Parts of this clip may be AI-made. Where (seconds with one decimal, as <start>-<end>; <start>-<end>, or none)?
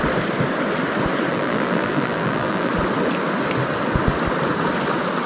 1.3-2.7